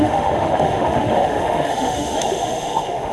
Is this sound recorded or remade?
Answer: remade